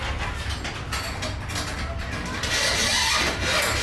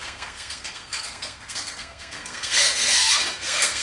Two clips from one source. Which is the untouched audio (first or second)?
first